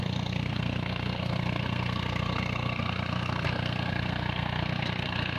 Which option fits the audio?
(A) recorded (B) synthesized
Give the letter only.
B